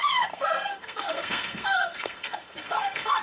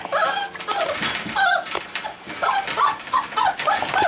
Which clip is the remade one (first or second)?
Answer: first